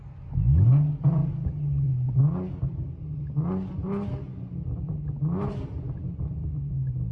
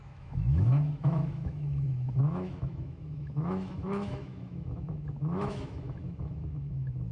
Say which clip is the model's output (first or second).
second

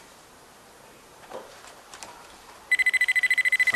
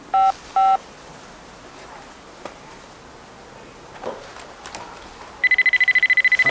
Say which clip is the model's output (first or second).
first